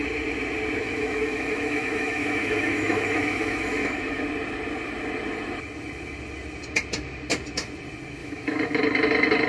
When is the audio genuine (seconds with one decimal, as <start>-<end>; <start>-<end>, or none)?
0.0-0.8; 4.2-8.2; 8.8-9.5